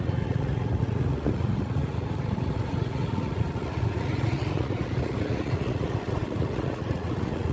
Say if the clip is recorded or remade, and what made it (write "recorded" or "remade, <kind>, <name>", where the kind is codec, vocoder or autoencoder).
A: remade, vocoder, Vocos